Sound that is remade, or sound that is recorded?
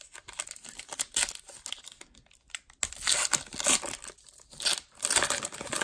recorded